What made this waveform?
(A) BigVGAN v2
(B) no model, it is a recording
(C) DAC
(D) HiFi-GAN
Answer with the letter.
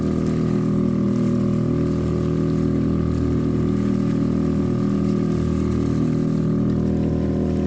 B